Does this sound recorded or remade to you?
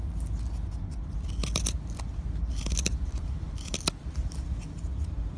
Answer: recorded